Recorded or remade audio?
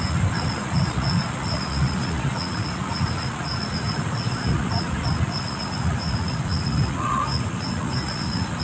remade